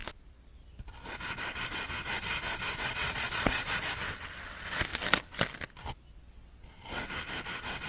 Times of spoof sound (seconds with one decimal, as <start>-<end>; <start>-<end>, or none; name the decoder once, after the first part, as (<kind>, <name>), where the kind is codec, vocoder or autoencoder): 3.0-3.8 (vocoder, Vocos)

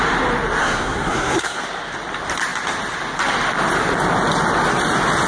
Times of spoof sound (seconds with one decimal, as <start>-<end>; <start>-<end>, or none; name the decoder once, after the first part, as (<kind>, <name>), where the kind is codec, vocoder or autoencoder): 0.6-1.6 (codec, SNAC)

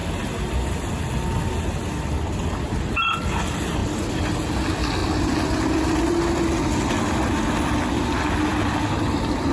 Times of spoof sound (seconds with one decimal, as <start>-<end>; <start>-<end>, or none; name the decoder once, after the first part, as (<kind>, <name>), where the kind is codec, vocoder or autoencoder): 3.8-4.5 (vocoder, BigVGAN v2); 5.0-6.4; 8.5-9.5

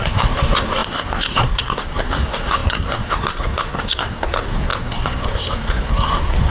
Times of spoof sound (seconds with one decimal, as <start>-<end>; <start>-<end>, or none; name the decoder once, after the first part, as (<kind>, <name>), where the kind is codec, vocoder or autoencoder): 0.0-6.5 (codec, SNAC)

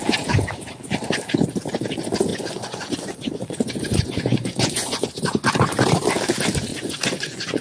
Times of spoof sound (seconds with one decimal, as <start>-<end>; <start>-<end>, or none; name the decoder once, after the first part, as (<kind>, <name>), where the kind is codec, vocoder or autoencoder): 2.3-5.1 (vocoder, Vocos); 6.7-7.6

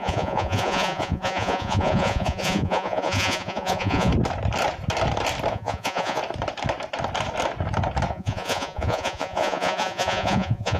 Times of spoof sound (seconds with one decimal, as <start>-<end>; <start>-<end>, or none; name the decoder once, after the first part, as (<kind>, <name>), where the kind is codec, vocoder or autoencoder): 0.0-4.1 (vocoder, Vocos); 5.5-6.2; 8.1-10.8

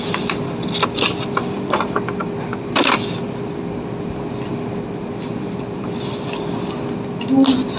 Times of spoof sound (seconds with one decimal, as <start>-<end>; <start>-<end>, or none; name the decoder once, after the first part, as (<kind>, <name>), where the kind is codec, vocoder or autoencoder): none

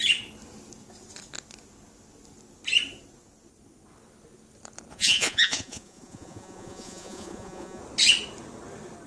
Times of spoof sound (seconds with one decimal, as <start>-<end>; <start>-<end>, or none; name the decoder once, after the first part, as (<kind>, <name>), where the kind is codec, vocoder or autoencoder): 4.9-7.8 (vocoder, Vocos)